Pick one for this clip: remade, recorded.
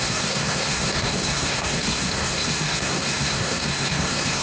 remade